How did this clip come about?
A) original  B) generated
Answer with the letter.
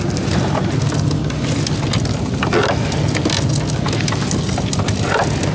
A